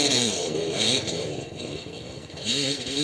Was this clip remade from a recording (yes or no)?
yes